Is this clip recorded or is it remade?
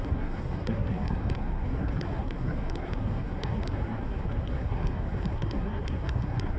remade